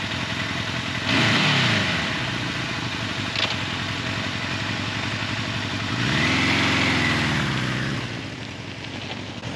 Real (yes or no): yes